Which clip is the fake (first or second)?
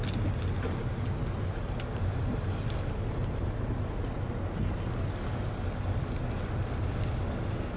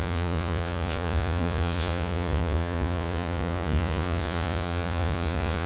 second